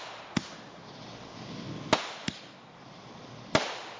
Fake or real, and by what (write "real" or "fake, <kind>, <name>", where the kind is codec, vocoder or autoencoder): real